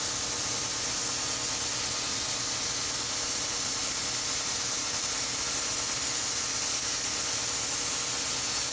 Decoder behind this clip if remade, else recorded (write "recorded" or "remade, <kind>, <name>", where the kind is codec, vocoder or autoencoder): recorded